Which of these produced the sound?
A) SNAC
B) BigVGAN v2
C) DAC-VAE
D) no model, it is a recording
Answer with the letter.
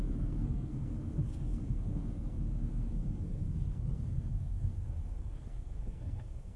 A